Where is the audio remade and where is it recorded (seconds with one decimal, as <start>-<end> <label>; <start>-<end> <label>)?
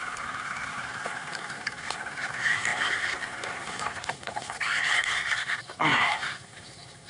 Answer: 0.0-7.1 remade